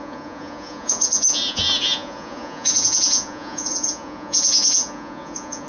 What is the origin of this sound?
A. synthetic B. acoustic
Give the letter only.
A